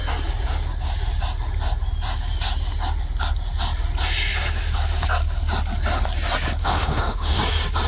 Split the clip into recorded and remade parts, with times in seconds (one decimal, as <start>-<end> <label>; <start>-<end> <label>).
0.0-6.6 recorded; 6.6-7.4 remade; 7.4-7.9 recorded